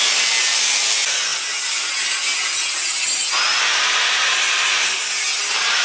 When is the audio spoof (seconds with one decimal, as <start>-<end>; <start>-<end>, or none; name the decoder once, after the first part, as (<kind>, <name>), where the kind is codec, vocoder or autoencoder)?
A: none